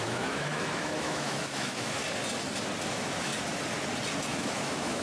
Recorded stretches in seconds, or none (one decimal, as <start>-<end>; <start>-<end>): 2.0-2.9; 3.3-4.3